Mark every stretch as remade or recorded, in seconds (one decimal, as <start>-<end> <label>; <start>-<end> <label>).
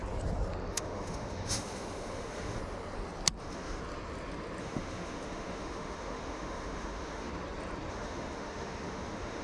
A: 0.0-0.7 recorded; 0.7-2.6 remade; 2.6-3.4 recorded; 3.4-3.8 remade; 3.8-4.6 recorded; 4.6-7.3 remade; 7.3-7.9 recorded; 7.9-9.4 remade